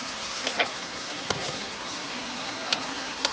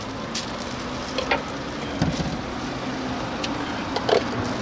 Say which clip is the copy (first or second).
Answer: first